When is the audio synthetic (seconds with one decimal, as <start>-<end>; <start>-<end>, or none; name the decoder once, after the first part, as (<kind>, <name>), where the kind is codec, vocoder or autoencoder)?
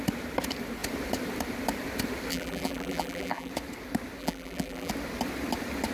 2.3-3.5 (vocoder, BigVGAN v2); 4.2-4.9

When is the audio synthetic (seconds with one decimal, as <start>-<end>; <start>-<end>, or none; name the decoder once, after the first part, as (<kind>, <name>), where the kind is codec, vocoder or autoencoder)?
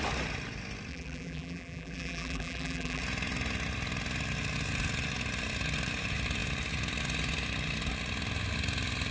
0.9-3.0 (vocoder, BigVGAN v2)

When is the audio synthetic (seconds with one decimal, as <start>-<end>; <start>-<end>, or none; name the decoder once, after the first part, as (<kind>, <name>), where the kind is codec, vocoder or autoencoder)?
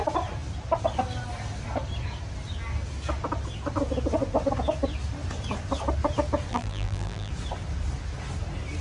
6.5-7.3 (vocoder, BigVGAN v2)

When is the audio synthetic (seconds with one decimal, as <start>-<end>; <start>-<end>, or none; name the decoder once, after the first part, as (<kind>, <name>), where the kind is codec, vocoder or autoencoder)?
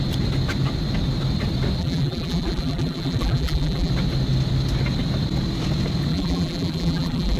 1.8-3.9 (vocoder, BigVGAN v2); 6.1-7.4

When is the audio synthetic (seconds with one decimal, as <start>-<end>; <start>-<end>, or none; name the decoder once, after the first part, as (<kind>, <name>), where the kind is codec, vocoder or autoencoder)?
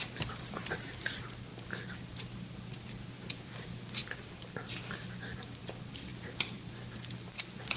none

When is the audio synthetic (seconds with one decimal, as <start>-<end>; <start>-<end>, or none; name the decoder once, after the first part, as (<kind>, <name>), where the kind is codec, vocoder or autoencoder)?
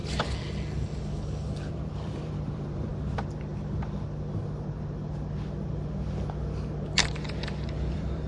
1.7-2.9 (vocoder, BigVGAN v2); 7.9-8.3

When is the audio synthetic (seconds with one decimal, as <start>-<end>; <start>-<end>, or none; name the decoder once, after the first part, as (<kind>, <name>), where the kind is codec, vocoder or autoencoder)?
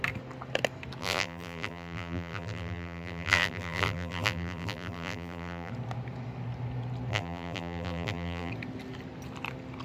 1.0-5.7 (vocoder, BigVGAN v2); 7.1-8.5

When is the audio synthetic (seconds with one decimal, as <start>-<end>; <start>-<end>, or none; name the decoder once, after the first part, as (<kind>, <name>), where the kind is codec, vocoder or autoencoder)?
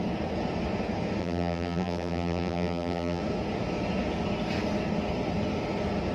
1.2-3.2 (vocoder, BigVGAN v2)